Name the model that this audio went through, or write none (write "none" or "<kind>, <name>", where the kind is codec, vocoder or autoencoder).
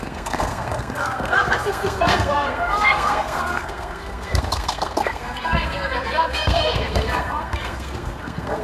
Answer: codec, SNAC